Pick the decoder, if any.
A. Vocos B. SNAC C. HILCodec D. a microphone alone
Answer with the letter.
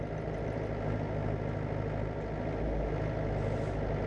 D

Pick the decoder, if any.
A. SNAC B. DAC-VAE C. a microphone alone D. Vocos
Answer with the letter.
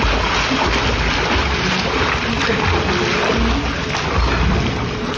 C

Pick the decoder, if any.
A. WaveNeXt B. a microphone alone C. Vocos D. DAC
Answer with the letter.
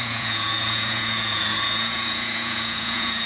C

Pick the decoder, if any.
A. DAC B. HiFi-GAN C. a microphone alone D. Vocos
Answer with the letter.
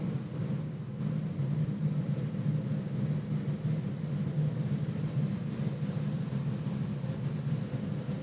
C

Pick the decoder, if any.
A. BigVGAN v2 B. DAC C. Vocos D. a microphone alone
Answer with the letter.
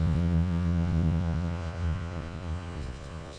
C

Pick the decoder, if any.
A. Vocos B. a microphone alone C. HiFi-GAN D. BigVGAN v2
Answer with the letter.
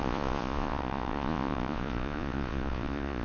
A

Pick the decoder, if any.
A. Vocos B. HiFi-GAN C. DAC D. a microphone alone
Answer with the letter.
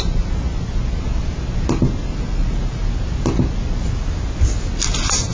D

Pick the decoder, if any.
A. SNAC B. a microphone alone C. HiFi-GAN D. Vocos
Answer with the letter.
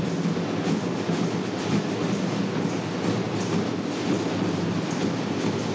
B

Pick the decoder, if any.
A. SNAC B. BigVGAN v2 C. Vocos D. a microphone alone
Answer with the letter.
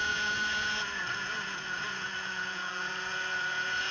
C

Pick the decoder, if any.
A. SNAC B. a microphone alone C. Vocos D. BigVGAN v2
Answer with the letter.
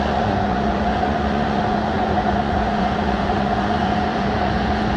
C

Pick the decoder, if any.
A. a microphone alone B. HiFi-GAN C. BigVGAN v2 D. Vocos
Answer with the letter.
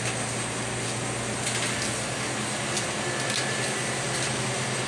A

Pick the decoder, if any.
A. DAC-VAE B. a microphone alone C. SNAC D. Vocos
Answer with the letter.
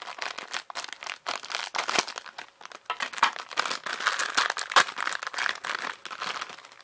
B